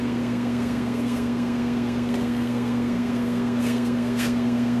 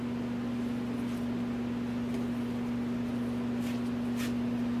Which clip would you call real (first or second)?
second